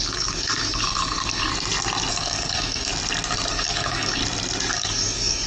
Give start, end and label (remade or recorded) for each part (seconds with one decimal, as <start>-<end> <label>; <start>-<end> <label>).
0.0-1.5 remade; 1.5-2.1 recorded; 2.1-2.9 remade; 2.9-3.5 recorded; 3.5-4.2 remade; 4.2-4.7 recorded; 4.7-5.5 remade